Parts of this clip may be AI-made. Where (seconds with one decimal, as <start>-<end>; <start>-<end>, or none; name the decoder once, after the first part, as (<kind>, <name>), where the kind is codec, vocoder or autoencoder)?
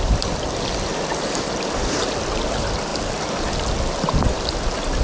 none